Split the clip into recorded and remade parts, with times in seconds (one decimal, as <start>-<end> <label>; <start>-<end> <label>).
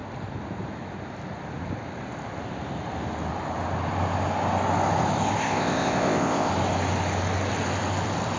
0.0-5.4 recorded; 5.4-6.5 remade; 6.5-8.4 recorded